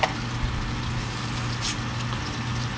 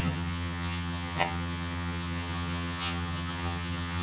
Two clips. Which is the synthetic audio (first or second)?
second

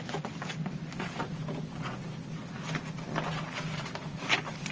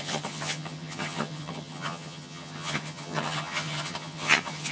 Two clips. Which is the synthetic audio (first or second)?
second